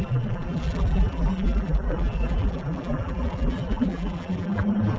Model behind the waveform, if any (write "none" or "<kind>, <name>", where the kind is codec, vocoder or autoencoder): vocoder, BigVGAN v2